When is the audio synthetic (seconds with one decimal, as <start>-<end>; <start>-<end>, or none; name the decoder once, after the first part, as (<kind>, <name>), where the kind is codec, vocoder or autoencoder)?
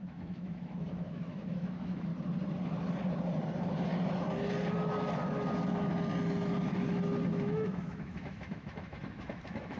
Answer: 0.0-2.1 (autoencoder, DAC-VAE); 7.3-9.8